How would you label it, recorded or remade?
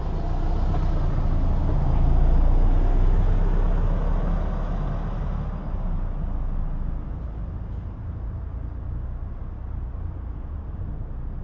recorded